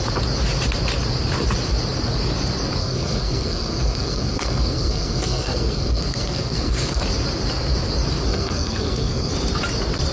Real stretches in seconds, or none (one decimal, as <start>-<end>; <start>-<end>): 0.0-2.8; 7.0-8.3; 9.3-10.1